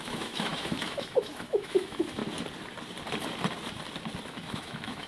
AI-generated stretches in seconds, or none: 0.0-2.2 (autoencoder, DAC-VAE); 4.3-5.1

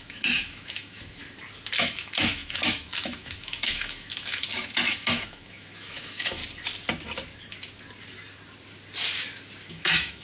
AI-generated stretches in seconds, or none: 0.0-1.2 (autoencoder, DAC-VAE); 1.8-6.4; 9.7-10.2

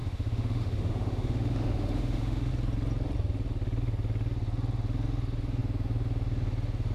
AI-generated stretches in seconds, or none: 0.0-2.5 (autoencoder, DAC-VAE)